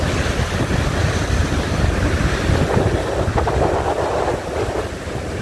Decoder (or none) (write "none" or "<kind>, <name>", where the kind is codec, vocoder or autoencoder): none